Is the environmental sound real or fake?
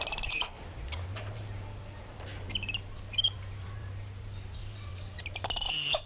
fake